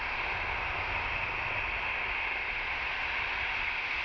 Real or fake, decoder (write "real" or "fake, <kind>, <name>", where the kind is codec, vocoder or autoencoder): real